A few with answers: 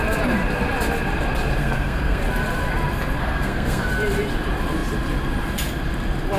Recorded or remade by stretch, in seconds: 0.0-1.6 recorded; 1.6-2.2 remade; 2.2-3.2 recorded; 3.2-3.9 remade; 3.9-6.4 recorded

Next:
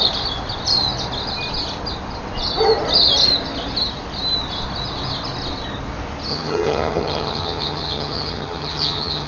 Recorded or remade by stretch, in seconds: 0.0-6.3 recorded; 6.3-9.3 remade